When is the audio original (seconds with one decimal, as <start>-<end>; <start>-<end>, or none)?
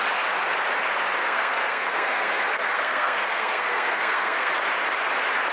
0.0-1.2; 4.5-5.5